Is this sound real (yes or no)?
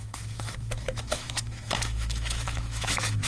no